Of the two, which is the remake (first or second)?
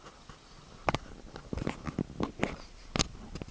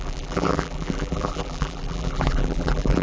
second